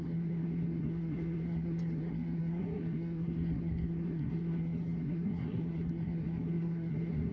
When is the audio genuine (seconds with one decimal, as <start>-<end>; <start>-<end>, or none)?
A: none

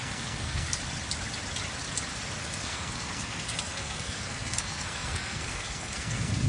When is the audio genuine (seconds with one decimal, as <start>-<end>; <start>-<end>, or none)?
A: 0.8-2.4

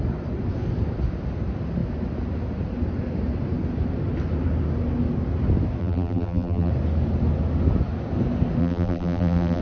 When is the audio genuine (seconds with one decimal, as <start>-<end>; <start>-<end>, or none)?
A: 0.0-5.8; 6.7-8.6

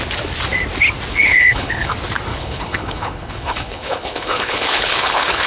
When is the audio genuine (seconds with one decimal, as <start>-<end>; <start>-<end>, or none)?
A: 0.0-1.1; 1.9-2.3

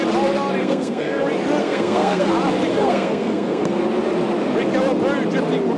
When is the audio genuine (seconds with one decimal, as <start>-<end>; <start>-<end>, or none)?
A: 0.0-0.6; 1.2-1.6; 2.3-2.7; 3.8-5.8

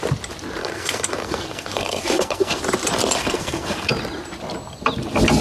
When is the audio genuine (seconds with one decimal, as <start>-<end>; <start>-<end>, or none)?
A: 0.0-0.6; 2.6-3.2; 3.9-5.4